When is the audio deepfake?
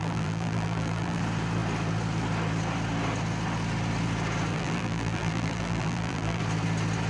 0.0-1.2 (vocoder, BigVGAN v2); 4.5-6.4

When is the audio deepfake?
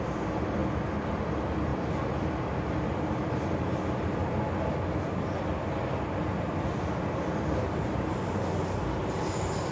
none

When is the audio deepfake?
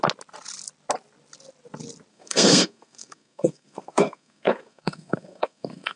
2.1-6.0 (codec, SNAC)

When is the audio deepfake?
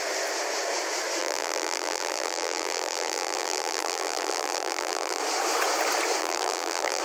1.2-5.2 (vocoder, BigVGAN v2); 6.2-7.0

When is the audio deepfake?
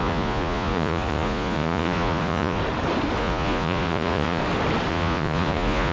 0.0-2.6 (vocoder, Vocos); 3.2-4.4; 4.9-5.9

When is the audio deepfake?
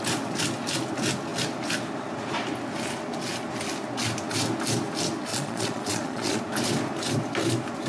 5.3-6.4 (vocoder, Vocos)